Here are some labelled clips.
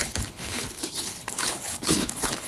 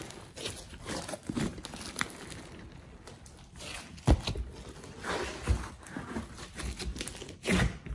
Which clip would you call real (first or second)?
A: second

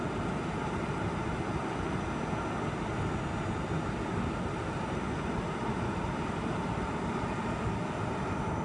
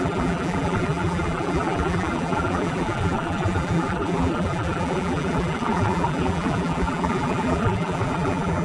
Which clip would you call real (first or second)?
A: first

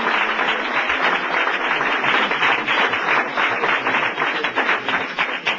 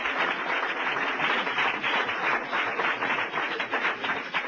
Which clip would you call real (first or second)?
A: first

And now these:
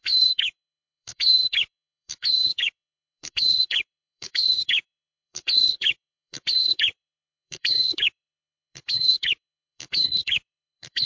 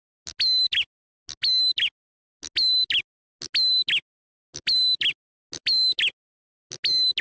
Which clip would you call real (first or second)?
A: second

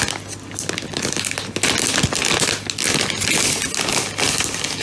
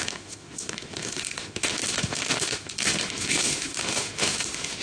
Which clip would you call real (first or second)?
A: first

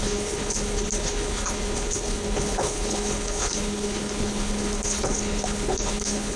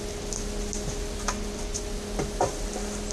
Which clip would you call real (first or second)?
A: second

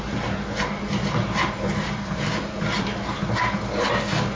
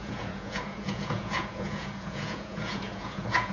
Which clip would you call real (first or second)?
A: first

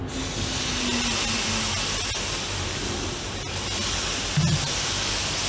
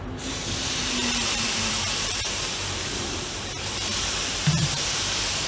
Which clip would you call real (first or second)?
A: first